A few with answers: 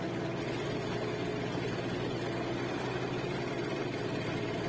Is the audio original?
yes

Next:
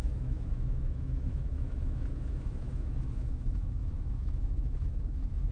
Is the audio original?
no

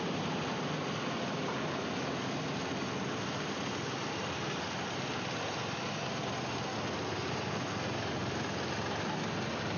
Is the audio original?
yes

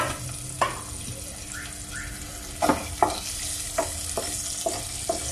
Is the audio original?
yes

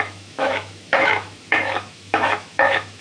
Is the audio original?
no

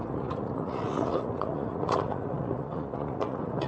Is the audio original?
no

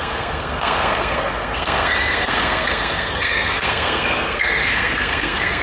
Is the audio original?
no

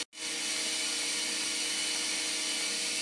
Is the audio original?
yes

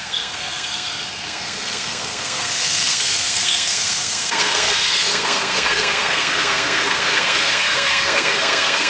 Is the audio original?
no